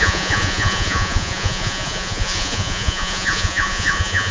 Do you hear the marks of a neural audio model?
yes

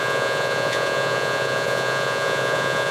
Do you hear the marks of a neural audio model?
yes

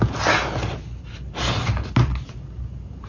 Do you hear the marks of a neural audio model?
no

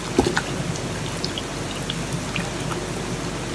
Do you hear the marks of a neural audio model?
no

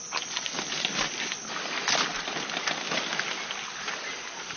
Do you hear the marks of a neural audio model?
no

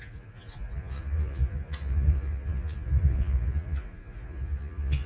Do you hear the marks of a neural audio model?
yes